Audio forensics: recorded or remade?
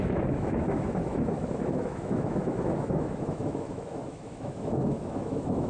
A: remade